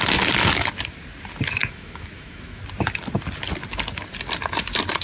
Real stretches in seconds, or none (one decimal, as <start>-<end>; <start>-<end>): 0.0-1.6; 2.6-5.0